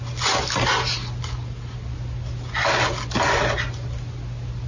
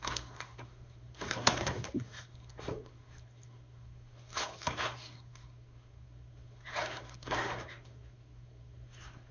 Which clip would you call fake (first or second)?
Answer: second